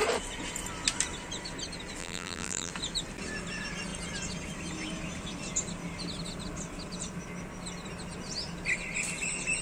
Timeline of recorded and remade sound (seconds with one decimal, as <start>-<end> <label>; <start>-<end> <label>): 0.0-2.0 recorded; 2.0-2.7 remade; 2.7-9.6 recorded